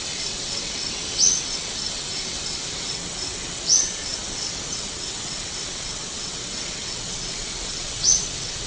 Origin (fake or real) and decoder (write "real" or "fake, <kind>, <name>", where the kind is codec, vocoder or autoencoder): fake, vocoder, WaveNeXt